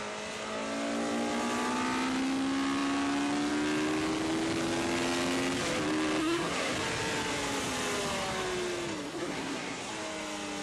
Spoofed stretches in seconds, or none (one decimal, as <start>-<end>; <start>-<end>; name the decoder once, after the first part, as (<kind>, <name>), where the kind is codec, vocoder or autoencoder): 6.2-6.7 (codec, SNAC); 9.1-9.9